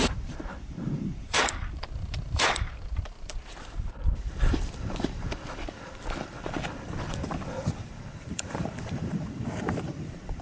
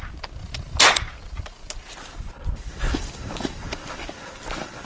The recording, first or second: second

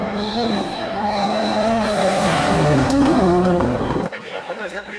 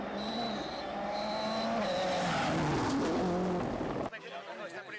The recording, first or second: second